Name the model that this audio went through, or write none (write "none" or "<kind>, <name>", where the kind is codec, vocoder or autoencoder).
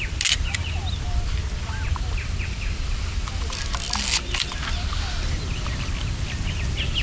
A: none